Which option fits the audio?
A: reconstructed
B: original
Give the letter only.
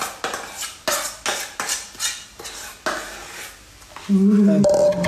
B